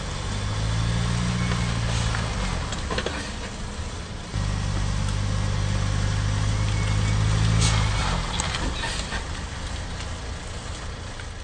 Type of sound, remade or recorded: recorded